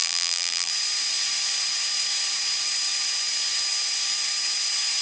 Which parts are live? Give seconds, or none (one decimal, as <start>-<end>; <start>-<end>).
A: 0.7-5.0